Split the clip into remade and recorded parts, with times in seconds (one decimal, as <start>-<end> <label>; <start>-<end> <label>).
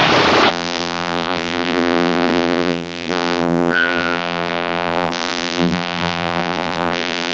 0.0-0.5 recorded; 0.5-7.3 remade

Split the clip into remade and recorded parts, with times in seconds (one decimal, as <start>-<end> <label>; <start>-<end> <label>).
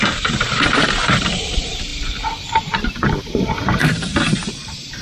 0.0-1.9 remade; 1.9-3.2 recorded; 3.2-5.0 remade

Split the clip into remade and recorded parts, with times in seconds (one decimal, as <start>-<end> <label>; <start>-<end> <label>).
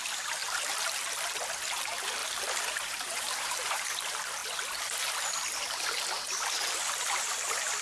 0.0-2.2 recorded; 2.2-3.8 remade; 3.8-7.8 recorded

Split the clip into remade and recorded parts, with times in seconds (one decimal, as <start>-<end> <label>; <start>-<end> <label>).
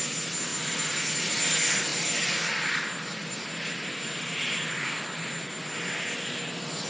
0.0-6.9 recorded